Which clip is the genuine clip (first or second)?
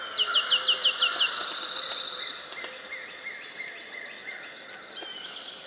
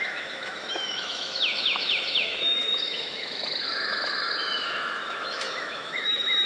first